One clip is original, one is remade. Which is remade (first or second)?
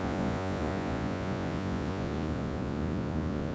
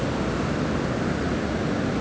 first